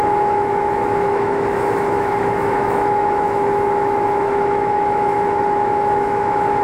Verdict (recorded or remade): remade